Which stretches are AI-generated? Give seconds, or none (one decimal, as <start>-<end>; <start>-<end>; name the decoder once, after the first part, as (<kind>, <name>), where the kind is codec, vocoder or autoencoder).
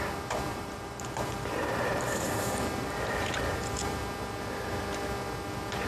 0.5-4.0 (vocoder, BigVGAN v2)